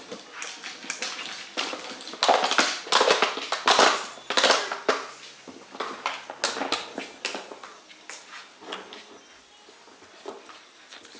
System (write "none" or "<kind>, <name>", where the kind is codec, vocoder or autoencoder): none